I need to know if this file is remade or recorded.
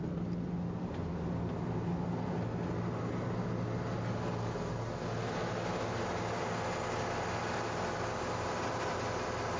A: recorded